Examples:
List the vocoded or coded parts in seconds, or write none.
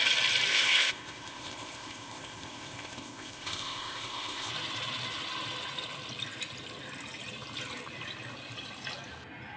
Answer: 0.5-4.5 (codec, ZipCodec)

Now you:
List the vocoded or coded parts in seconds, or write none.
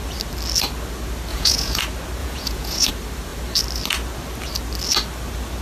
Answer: 1.3-1.8 (vocoder, Vocos); 2.2-2.9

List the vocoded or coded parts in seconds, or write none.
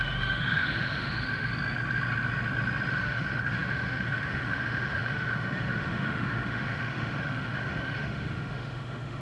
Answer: 0.0-1.5 (autoencoder, DAC-VAE); 2.9-9.2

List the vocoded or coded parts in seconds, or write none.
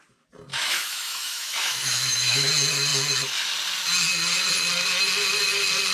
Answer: 0.5-2.5 (autoencoder, DAC-VAE)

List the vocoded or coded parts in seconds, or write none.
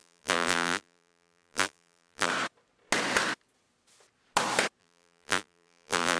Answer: 0.0-2.3 (vocoder, BigVGAN v2); 4.8-6.2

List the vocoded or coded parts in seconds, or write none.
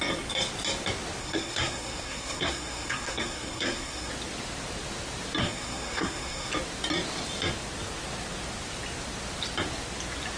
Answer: 1.2-4.1 (codec, SNAC); 5.4-6.5